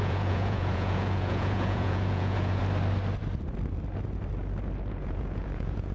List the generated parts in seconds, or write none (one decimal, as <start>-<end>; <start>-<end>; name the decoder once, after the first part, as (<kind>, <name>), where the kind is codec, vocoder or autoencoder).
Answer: 0.0-2.6 (vocoder, Vocos); 4.9-5.9